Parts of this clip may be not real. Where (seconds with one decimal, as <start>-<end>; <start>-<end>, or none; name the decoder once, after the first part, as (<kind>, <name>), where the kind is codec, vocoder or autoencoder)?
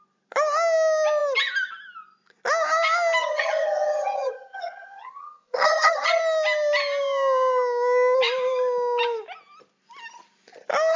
3.2-6.2 (vocoder, HiFi-GAN)